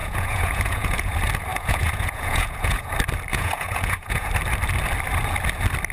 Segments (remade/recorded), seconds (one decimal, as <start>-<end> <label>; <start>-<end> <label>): 0.0-1.1 remade; 1.1-1.5 recorded; 1.5-2.9 remade; 2.9-3.3 recorded; 3.3-4.3 remade; 4.3-5.9 recorded